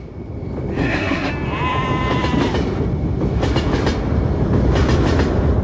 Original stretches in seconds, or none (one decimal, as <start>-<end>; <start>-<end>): 0.0-0.8; 1.3-5.6